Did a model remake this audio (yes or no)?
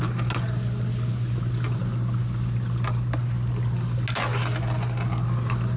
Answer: no